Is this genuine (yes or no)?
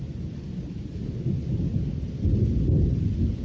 yes